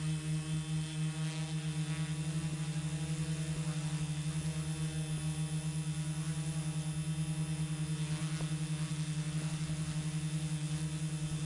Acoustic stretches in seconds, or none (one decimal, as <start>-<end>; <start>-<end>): 0.0-11.4